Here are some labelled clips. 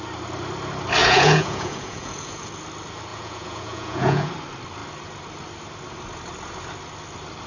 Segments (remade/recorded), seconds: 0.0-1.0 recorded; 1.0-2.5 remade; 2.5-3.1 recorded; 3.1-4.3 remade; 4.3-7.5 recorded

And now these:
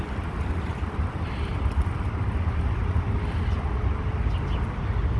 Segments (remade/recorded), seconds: 0.0-5.2 recorded

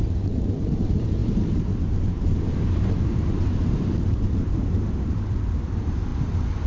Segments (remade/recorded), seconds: 0.0-6.1 remade; 6.1-6.7 recorded

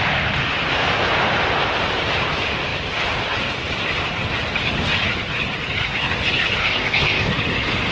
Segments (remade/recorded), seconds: 0.0-6.6 recorded; 6.6-7.3 remade; 7.3-7.9 recorded

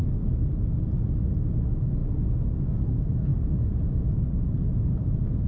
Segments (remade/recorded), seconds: 0.0-5.5 recorded

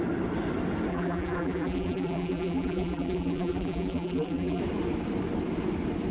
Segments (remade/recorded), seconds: 0.0-0.9 recorded; 0.9-4.6 remade; 4.6-6.1 recorded